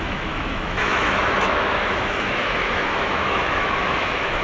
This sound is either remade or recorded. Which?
remade